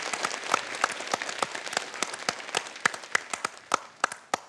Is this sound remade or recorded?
recorded